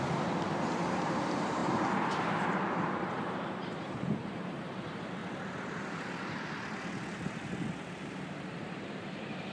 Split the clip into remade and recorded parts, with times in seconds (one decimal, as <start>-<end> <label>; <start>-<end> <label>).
0.0-5.2 remade; 5.2-7.8 recorded; 7.8-9.5 remade